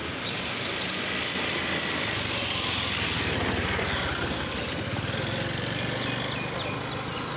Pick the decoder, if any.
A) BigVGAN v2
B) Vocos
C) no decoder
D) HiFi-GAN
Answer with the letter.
C